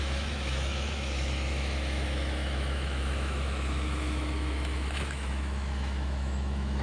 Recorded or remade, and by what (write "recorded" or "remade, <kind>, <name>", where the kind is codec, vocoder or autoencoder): remade, autoencoder, DAC-VAE